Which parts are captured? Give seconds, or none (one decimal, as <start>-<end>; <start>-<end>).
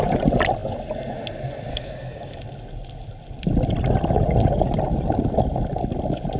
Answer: 0.0-1.7; 2.4-6.4